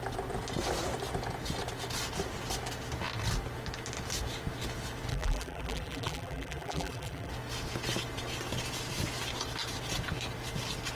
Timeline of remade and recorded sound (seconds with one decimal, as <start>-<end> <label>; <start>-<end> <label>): 0.0-5.1 recorded; 5.1-7.3 remade; 7.3-11.0 recorded